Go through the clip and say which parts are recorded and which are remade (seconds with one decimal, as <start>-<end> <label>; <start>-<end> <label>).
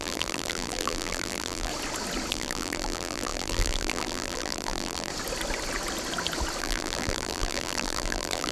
0.0-1.7 remade; 1.7-2.3 recorded; 2.3-5.1 remade; 5.1-6.6 recorded; 6.6-8.5 remade